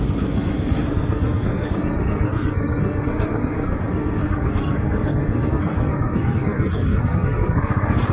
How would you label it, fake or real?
fake